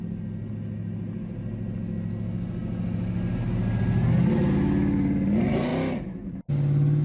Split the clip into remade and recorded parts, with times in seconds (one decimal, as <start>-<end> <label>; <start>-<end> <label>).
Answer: 0.0-7.0 recorded